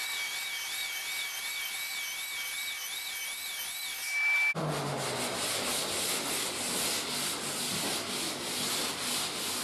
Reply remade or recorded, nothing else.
recorded